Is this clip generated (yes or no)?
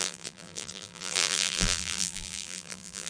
yes